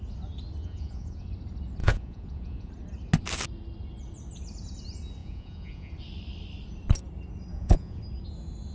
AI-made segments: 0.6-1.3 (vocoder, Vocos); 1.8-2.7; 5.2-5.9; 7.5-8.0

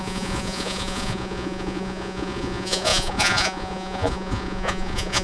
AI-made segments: 0.0-5.2 (vocoder, Vocos)

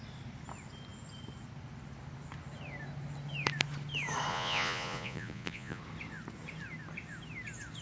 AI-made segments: 4.3-5.8 (vocoder, Vocos)